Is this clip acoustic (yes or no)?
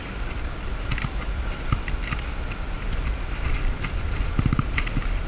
yes